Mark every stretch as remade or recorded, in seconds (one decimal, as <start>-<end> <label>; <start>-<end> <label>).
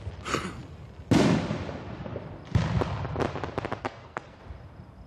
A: 0.0-3.8 recorded; 3.8-4.4 remade; 4.4-5.1 recorded